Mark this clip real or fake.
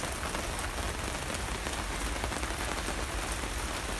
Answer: real